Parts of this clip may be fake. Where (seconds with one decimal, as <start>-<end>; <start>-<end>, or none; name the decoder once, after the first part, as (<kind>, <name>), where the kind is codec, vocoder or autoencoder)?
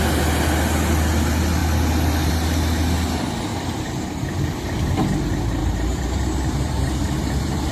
3.5-4.3 (vocoder, BigVGAN v2); 5.6-7.7